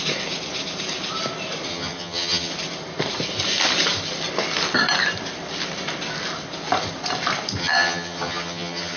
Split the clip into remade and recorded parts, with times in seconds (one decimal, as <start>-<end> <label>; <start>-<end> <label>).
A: 0.0-1.7 recorded; 1.7-2.5 remade; 2.5-7.6 recorded; 7.6-9.0 remade